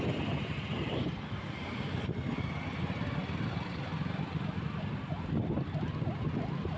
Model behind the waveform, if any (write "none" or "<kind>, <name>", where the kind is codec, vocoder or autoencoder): none